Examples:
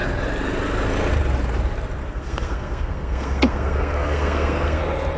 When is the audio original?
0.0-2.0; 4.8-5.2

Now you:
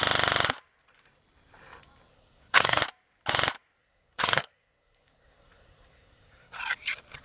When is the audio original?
0.0-2.1; 2.8-3.8; 6.6-7.2